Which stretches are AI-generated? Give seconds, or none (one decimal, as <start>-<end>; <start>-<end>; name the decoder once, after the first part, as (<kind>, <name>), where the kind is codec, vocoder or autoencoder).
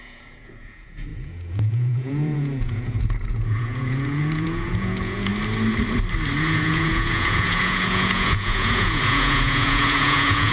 0.0-5.3 (vocoder, Vocos); 6.4-10.5